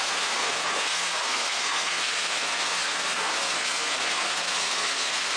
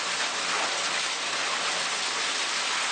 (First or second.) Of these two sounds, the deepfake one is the first